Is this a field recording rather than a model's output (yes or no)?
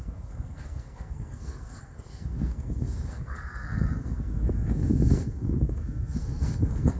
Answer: no